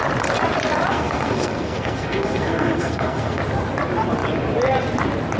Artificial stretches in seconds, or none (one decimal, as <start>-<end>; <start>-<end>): 0.9-3.4